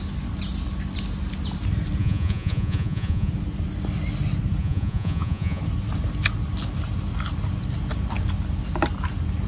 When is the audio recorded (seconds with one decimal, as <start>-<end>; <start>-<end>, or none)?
0.0-2.0; 3.3-4.6; 5.6-9.5